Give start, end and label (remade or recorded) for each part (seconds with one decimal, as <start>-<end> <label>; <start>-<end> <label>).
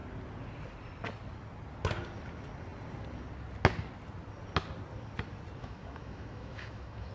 0.0-5.6 recorded; 5.6-7.1 remade